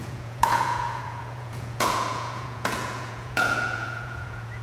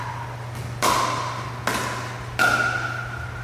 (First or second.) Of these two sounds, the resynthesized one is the first